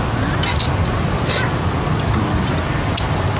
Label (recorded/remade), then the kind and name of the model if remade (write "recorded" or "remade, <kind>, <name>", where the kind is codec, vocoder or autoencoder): recorded